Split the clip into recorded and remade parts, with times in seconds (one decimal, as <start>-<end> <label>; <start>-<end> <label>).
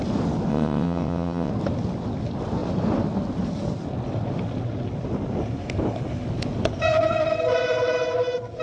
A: 0.0-0.5 recorded; 0.5-1.5 remade; 1.5-8.6 recorded